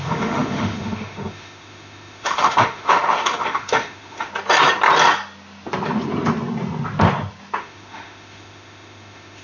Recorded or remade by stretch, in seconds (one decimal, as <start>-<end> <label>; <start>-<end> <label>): 0.0-4.3 remade; 4.3-7.6 recorded; 7.6-9.4 remade